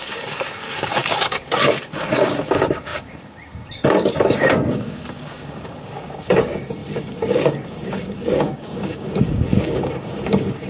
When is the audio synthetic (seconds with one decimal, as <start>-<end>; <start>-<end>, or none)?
0.0-10.7